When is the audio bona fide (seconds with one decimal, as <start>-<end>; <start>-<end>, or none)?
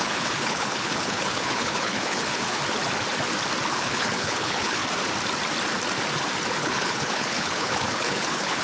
2.6-3.7; 4.8-6.5